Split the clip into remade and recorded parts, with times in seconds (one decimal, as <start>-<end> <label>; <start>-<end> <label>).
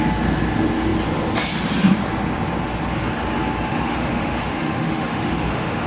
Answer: 0.0-3.7 recorded; 3.7-5.9 remade